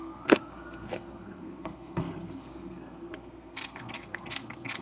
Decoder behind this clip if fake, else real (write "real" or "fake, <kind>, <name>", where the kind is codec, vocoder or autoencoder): fake, codec, SNAC